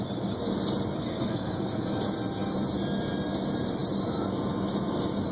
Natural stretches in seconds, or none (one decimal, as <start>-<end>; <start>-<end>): 0.0-1.0; 1.9-5.3